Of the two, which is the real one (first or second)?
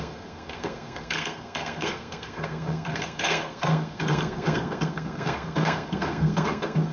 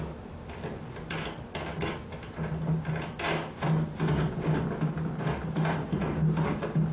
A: second